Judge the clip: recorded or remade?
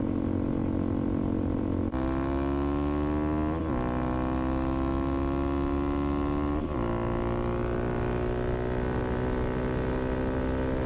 recorded